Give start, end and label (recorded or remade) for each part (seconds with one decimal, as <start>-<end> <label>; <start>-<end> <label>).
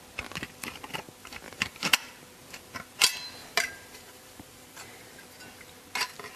0.0-1.2 recorded; 1.2-2.1 remade; 2.1-3.4 recorded; 3.4-5.2 remade; 5.2-6.4 recorded